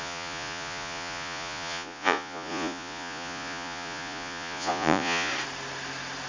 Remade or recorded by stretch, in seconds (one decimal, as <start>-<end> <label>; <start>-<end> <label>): 0.0-5.3 remade; 5.3-6.3 recorded